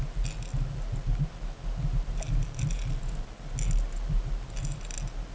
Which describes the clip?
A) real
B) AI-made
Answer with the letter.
A